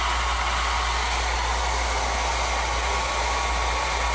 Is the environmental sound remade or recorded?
recorded